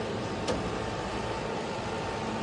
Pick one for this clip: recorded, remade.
remade